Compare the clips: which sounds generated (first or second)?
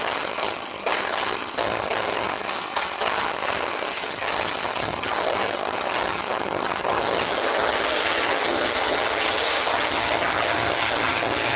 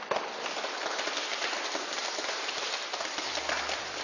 first